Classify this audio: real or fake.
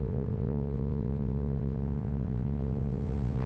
fake